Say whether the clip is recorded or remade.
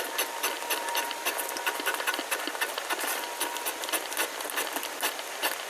recorded